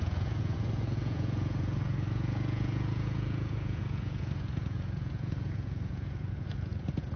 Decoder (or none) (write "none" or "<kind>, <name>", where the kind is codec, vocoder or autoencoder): vocoder, Vocos